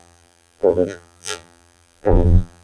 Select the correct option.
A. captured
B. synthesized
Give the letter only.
B